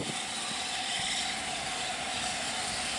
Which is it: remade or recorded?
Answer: recorded